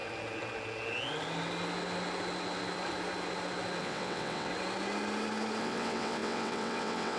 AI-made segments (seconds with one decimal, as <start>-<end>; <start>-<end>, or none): 3.8-4.5; 5.6-7.2